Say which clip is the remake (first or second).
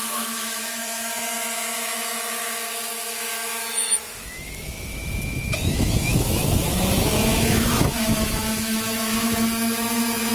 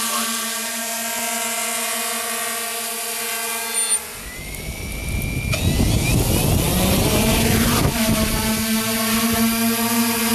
first